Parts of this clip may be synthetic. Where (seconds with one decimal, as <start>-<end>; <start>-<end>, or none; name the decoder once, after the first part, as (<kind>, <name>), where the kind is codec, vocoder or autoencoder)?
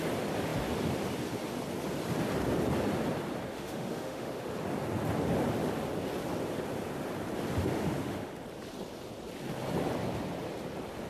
3.5-4.5 (autoencoder, DAC-VAE); 7.8-8.3